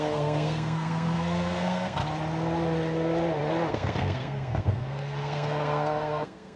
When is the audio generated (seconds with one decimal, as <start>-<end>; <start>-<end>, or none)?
0.0-2.0; 3.7-6.6

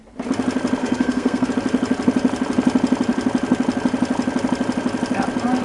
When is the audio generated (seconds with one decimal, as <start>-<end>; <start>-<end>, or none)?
0.8-1.5

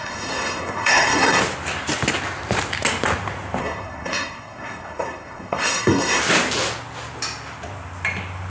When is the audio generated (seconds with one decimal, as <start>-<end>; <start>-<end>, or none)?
0.0-1.4; 3.6-6.2

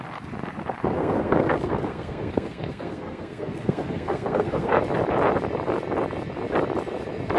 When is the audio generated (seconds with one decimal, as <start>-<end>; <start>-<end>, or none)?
0.8-4.8

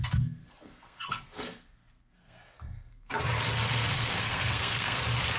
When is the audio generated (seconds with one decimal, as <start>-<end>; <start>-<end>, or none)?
0.0-3.2; 3.9-5.0

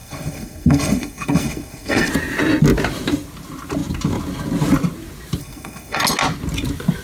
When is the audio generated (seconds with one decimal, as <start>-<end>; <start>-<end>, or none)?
0.0-2.1; 5.4-6.0